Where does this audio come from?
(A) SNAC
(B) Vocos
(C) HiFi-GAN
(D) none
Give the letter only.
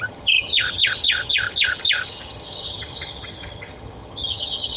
C